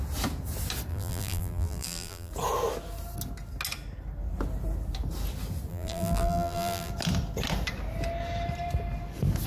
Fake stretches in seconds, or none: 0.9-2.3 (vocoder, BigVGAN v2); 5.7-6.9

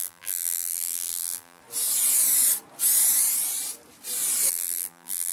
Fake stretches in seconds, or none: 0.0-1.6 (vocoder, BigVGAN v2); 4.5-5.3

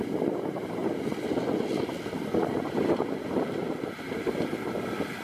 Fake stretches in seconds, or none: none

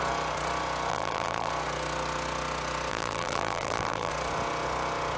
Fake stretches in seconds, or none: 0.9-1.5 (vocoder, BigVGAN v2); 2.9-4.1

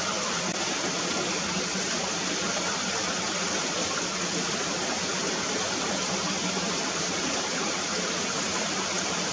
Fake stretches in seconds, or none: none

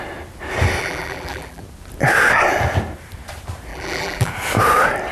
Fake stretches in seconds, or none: 0.8-1.6 (vocoder, BigVGAN v2); 3.7-4.3

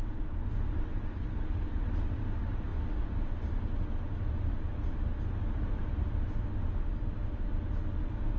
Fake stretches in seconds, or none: none

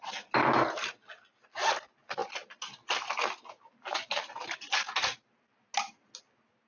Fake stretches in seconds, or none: none